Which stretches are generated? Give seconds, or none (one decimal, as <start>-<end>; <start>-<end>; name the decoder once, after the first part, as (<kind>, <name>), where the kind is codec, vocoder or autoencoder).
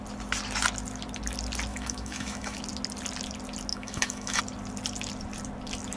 1.7-2.6 (autoencoder, DAC-VAE); 3.7-4.4